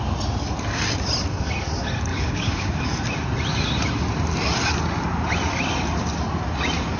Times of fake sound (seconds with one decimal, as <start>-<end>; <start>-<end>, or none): 2.1-2.8